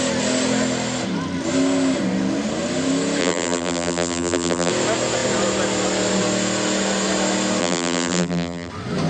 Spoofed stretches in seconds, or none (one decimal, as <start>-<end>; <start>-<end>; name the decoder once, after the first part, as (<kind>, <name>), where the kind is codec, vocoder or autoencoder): 3.2-4.7 (vocoder, BigVGAN v2); 7.6-8.7